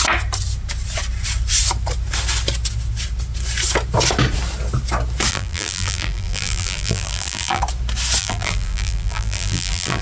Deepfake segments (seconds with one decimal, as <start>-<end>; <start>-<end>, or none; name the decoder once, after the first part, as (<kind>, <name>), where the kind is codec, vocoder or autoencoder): 5.3-7.6 (vocoder, BigVGAN v2); 8.2-10.0